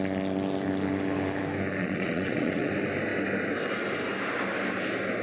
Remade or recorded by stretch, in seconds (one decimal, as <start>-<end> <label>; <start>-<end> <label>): 0.0-1.8 recorded; 1.8-2.7 remade; 2.7-5.2 recorded